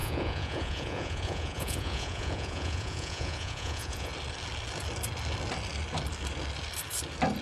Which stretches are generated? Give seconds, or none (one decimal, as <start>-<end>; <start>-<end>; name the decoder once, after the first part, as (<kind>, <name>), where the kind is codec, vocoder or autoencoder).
0.0-4.1 (vocoder, Vocos)